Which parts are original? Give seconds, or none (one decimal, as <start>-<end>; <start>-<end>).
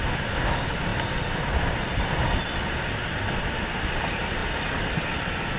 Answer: 0.0-5.6